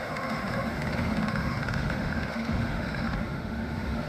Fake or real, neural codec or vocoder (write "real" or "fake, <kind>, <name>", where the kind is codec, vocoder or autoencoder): fake, autoencoder, DAC-VAE